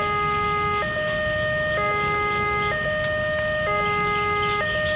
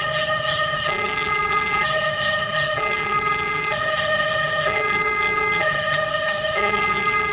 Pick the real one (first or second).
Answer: first